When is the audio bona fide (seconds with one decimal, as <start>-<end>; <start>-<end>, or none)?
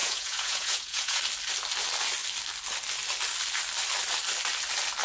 1.2-5.0